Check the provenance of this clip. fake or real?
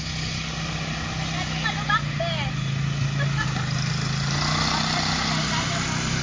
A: real